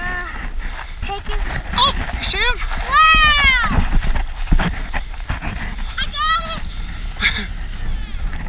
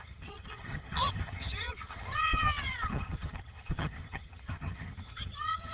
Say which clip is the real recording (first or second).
first